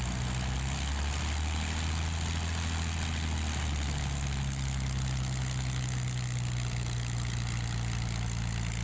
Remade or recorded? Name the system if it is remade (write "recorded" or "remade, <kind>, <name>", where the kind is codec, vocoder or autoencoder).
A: recorded